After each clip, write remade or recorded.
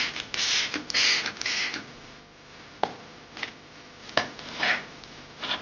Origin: recorded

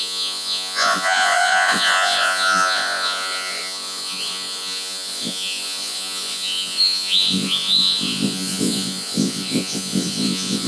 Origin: remade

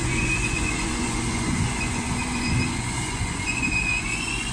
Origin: remade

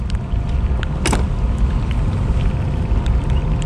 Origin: recorded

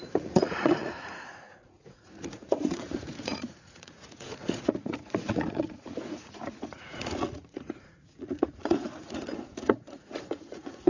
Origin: remade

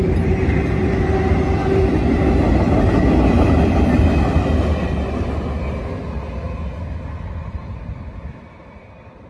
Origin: recorded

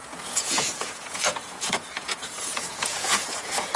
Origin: remade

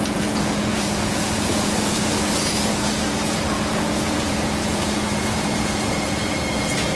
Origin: remade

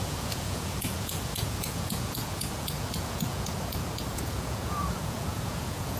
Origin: remade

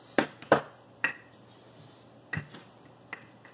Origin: recorded